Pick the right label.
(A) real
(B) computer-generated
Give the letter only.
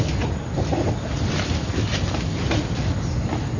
A